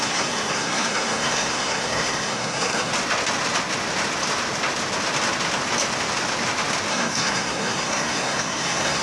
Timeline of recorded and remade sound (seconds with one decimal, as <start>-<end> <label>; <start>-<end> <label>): 0.0-2.9 remade; 2.9-6.9 recorded; 6.9-9.0 remade